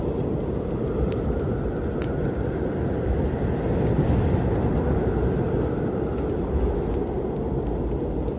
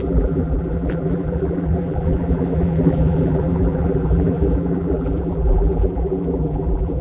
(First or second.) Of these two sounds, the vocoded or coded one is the second